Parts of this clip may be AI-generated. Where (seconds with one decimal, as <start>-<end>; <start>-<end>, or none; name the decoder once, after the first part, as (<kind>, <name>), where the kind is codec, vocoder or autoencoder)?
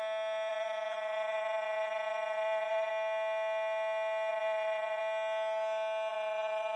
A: 0.5-2.9 (vocoder, Vocos); 4.3-5.0; 6.1-6.8